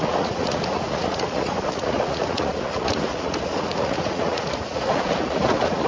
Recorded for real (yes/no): no